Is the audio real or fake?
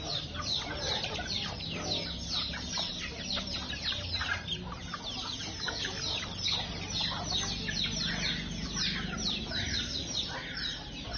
real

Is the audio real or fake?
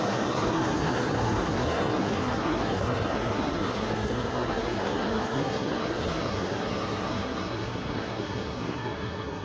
fake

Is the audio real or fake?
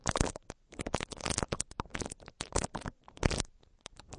fake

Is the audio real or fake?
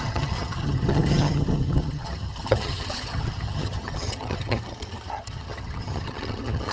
fake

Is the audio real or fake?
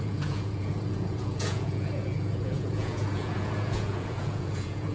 fake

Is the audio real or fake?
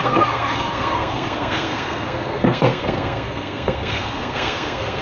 fake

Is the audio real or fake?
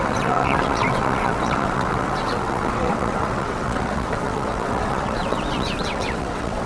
fake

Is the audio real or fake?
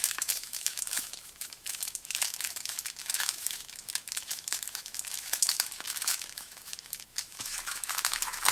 fake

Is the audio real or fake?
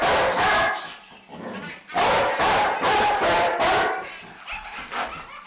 fake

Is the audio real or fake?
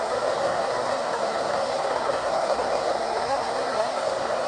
fake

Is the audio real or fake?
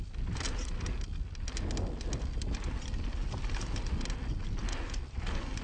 real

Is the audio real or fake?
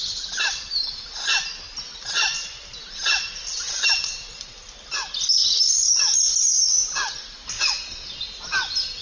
real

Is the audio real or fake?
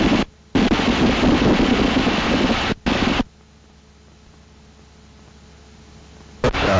real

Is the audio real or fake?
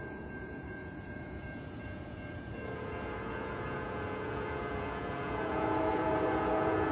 fake